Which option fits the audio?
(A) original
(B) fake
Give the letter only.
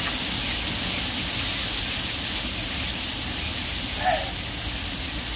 A